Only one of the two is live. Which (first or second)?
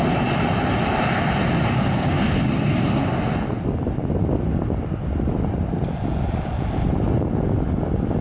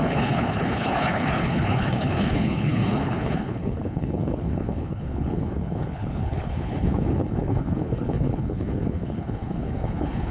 first